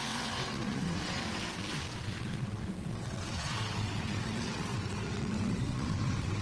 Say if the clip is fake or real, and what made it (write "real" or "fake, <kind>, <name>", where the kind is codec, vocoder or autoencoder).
fake, vocoder, WaveNeXt